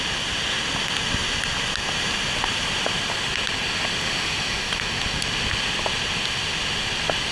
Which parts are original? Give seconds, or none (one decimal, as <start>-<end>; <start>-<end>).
0.0-7.3